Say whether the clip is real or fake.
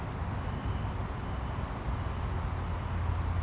real